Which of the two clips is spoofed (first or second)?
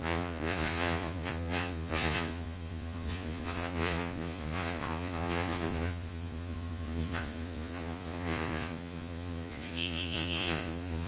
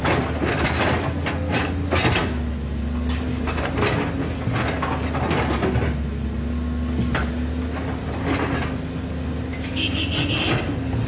first